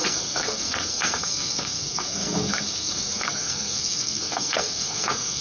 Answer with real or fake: fake